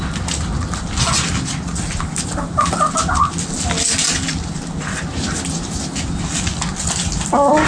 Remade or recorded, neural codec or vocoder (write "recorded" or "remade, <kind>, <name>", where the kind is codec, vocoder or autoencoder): recorded